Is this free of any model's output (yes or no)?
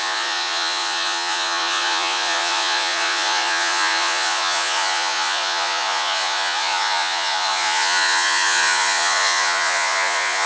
no